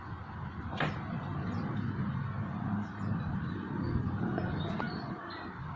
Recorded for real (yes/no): yes